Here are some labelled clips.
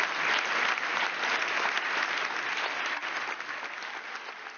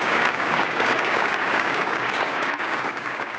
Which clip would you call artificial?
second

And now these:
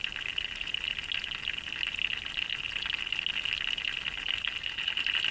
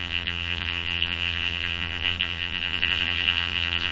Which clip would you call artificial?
second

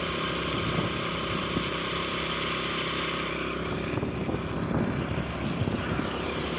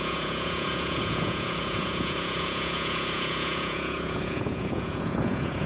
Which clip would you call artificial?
second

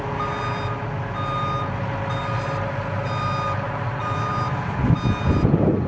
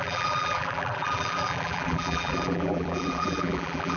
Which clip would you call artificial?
second